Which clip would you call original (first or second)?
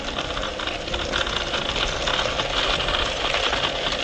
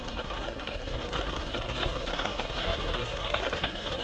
first